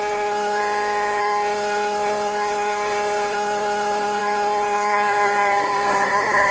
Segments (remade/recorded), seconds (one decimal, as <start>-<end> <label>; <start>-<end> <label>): 0.0-0.6 remade; 0.6-1.2 recorded; 1.2-6.5 remade